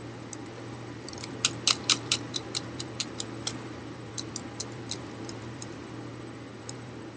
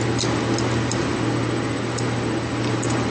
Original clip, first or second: second